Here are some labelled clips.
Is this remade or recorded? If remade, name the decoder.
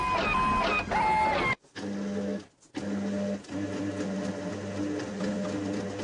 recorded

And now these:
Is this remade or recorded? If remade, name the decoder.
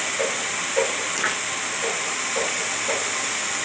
recorded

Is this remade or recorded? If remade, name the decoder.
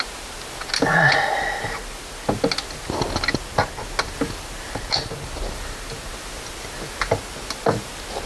recorded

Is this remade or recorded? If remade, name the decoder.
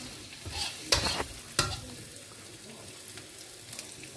recorded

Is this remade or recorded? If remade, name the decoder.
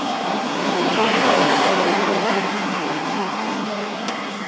remade, codec, SNAC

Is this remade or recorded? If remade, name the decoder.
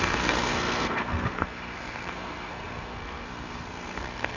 remade, codec, SNAC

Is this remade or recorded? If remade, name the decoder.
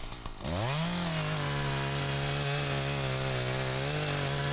recorded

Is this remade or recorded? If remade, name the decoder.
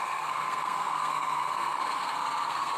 remade, codec, SNAC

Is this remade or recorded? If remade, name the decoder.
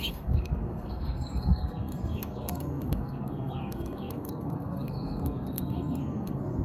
remade, codec, SNAC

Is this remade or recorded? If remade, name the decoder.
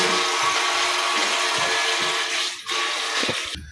recorded